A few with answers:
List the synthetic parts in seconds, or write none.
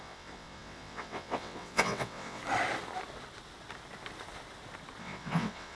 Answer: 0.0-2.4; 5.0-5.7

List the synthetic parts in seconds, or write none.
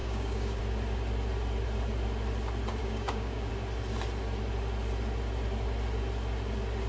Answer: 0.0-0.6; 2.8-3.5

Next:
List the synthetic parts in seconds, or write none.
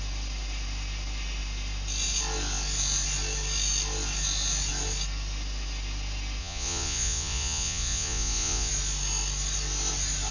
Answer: 6.4-8.7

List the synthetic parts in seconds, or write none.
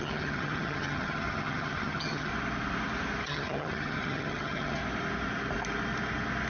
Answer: 0.0-2.3; 3.2-4.8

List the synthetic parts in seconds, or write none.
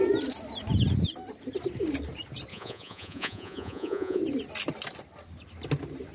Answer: 2.5-4.2